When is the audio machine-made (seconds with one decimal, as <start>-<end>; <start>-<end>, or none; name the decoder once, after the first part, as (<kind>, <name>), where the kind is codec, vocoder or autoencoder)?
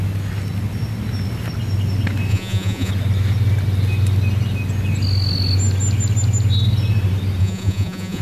2.3-2.9 (vocoder, Vocos); 7.4-8.2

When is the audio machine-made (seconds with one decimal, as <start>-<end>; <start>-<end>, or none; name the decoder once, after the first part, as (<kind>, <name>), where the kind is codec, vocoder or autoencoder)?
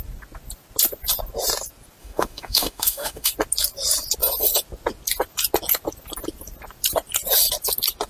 2.0-3.3 (autoencoder, DAC-VAE)